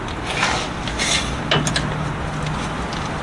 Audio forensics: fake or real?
real